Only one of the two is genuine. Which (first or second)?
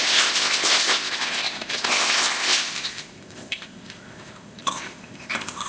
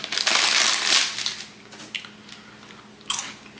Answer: second